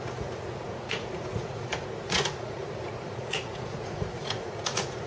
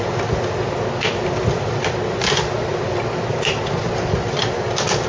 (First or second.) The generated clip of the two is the first